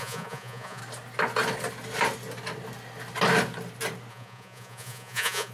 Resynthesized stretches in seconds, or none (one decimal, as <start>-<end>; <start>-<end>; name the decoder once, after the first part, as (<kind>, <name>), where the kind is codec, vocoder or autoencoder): 0.0-0.8 (vocoder, Vocos); 4.1-5.5